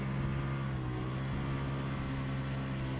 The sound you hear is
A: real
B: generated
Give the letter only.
A